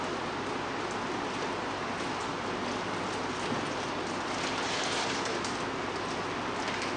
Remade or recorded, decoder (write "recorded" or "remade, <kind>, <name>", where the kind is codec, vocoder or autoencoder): recorded